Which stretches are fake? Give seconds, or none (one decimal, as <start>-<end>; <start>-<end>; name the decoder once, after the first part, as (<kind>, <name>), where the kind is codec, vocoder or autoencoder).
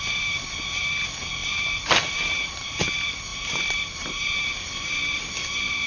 1.4-2.8 (vocoder, BigVGAN v2); 3.3-4.9